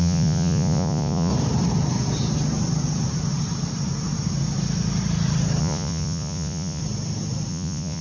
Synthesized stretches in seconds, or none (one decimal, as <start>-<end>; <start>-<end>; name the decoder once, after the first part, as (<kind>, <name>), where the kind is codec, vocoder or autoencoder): 0.0-1.3 (vocoder, Vocos); 5.6-6.8; 7.5-8.0